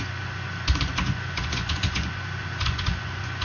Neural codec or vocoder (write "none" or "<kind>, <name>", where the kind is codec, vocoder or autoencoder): vocoder, Vocos